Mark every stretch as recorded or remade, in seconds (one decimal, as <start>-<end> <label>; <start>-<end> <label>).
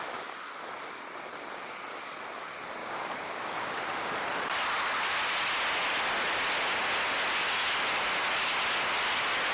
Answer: 0.0-2.8 recorded; 2.8-4.1 remade; 4.1-9.5 recorded